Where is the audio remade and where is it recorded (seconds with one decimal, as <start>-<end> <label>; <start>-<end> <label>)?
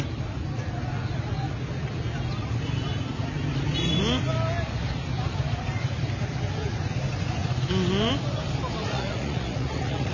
0.0-8.8 recorded; 8.8-10.1 remade